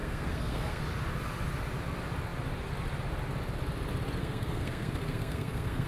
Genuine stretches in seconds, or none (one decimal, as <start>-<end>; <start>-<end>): 0.8-4.2